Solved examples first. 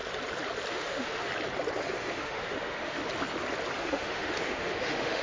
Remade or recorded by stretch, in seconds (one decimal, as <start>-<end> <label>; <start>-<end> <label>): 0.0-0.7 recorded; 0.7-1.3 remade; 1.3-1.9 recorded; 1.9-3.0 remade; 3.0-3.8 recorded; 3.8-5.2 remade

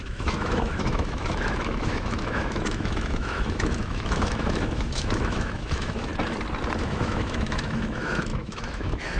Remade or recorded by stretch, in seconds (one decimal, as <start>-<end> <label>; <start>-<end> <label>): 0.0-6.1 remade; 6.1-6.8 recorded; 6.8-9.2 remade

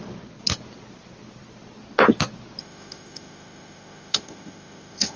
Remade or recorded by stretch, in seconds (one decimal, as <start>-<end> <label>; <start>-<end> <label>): 0.0-2.6 recorded; 2.6-5.2 remade

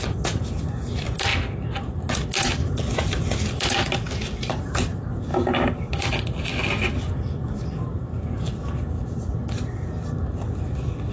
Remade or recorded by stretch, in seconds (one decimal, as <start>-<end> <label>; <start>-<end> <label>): 0.0-5.3 recorded; 5.3-6.0 remade; 6.0-11.1 recorded

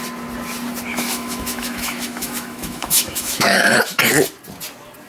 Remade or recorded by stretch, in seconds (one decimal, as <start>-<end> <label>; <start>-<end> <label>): 0.0-0.9 recorded; 0.9-4.0 remade; 4.0-5.1 recorded

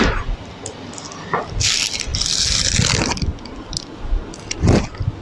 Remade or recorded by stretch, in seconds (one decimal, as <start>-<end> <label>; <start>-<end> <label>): 0.0-5.2 recorded